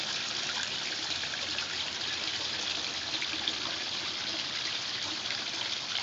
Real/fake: fake